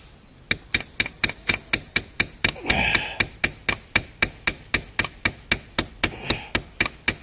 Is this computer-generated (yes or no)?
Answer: no